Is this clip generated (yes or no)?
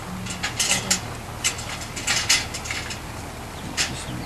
no